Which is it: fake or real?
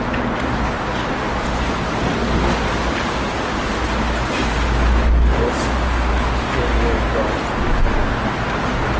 real